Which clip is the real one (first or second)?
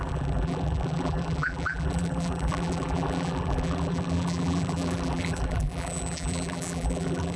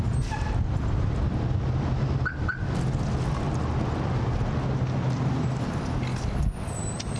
second